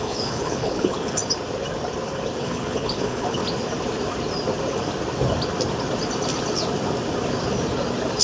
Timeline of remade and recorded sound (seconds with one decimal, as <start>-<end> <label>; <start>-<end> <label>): 0.0-1.2 remade; 1.2-2.4 recorded; 2.4-3.4 remade; 3.4-8.2 recorded